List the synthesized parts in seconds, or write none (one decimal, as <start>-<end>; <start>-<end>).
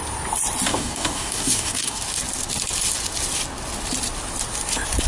0.7-2.0